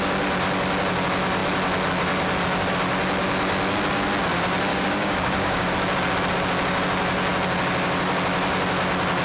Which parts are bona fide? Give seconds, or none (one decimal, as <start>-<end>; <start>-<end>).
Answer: 0.0-4.7; 5.7-9.2